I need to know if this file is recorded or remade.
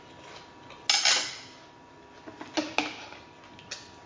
recorded